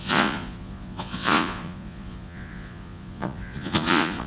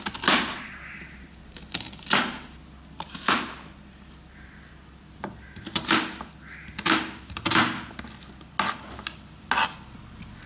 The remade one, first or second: first